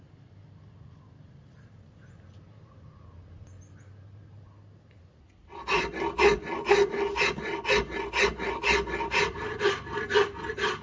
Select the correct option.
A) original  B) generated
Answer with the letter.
A